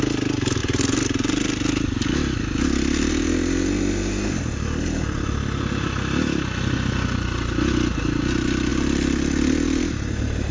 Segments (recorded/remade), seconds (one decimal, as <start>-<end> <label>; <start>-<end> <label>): 0.0-10.5 recorded